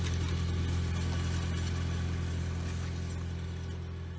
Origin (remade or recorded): recorded